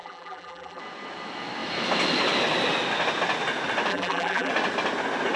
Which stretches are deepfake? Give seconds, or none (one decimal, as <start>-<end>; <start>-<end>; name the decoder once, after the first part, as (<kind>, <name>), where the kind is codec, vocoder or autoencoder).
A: 0.0-0.8 (vocoder, BigVGAN v2); 3.9-4.5